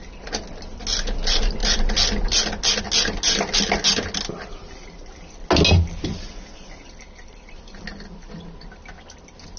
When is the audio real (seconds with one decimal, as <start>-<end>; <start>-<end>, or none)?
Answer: 0.0-9.6